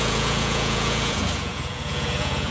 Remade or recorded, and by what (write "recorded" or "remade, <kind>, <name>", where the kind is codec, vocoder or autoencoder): remade, vocoder, Vocos